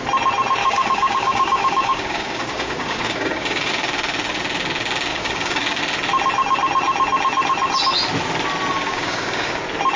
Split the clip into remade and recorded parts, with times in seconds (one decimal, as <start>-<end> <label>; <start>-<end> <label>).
0.0-0.6 recorded; 0.6-3.7 remade; 3.7-5.1 recorded; 5.1-5.8 remade; 5.8-8.9 recorded; 8.9-9.6 remade; 9.6-10.0 recorded